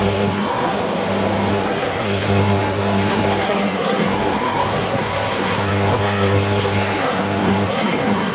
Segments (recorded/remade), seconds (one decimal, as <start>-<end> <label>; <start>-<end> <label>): 0.0-0.8 remade; 0.8-1.5 recorded; 1.5-8.3 remade